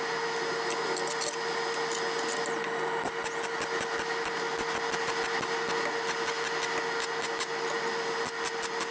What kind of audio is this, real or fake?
real